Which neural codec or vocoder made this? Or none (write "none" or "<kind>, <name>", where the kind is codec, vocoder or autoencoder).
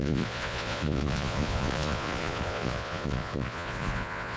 vocoder, Vocos